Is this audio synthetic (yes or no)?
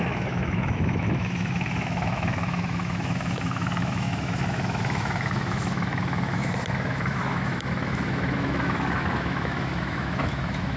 yes